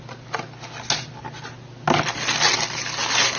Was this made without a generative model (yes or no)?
yes